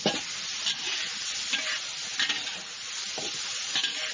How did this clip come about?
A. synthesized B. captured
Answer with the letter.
B